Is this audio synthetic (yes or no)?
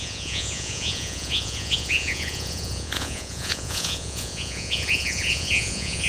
yes